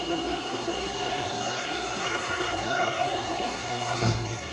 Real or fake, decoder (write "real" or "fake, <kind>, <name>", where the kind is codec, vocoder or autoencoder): fake, codec, SNAC